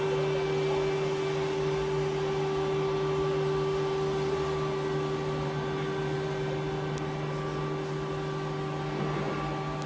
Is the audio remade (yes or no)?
no